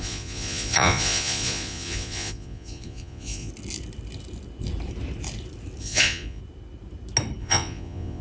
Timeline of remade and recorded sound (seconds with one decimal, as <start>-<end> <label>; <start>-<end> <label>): 0.0-3.5 remade; 3.5-5.8 recorded; 5.8-6.4 remade; 6.4-7.4 recorded; 7.4-8.2 remade